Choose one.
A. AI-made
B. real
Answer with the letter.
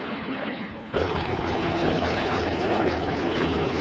A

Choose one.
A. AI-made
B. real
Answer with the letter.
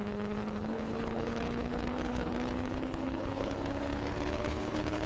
A